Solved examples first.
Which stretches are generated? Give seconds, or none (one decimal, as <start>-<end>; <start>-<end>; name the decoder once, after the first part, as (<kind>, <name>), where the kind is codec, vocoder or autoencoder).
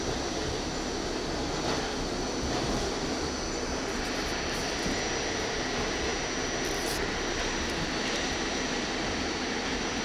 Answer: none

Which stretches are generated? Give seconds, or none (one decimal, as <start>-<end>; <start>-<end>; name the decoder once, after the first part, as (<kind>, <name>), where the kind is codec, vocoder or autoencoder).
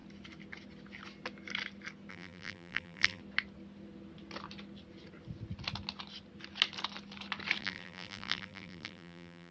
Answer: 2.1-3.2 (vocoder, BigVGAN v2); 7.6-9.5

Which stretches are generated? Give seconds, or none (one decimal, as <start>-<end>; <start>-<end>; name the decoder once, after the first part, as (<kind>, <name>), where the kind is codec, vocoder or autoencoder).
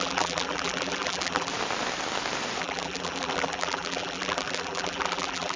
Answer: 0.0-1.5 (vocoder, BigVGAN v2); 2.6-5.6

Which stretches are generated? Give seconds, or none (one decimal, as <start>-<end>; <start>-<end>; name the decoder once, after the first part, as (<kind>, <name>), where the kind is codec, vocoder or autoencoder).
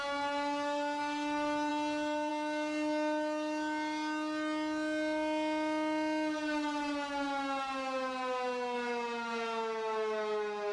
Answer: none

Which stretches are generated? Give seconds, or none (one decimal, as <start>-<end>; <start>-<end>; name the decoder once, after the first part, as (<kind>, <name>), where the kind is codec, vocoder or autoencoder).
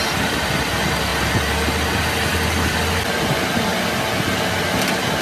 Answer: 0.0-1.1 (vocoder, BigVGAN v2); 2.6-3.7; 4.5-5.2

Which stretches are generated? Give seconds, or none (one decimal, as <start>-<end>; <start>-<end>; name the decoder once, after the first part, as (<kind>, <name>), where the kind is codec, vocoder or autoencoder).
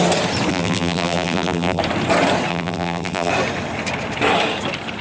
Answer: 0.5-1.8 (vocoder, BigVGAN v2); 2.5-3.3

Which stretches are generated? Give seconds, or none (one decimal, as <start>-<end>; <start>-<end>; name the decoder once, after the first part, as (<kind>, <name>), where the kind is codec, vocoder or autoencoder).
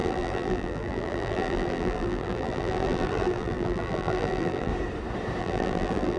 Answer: 0.0-4.7 (vocoder, BigVGAN v2); 5.4-6.2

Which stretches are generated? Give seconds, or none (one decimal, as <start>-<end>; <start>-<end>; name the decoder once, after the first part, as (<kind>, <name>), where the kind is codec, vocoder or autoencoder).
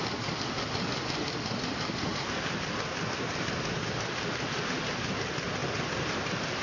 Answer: 2.1-3.0 (vocoder, BigVGAN v2)